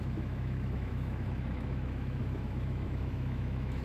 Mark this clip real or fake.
fake